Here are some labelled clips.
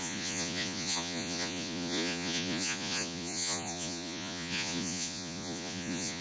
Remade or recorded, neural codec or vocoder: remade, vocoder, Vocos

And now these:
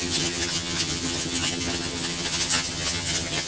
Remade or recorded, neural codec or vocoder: remade, vocoder, HiFi-GAN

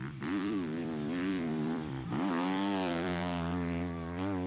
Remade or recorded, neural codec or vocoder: remade, vocoder, BigVGAN v2